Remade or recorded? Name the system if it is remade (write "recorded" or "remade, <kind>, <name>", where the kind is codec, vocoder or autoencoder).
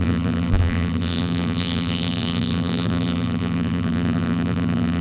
remade, vocoder, BigVGAN v2